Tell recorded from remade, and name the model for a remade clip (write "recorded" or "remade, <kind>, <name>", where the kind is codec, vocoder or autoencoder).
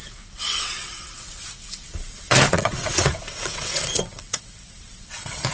remade, vocoder, WaveNeXt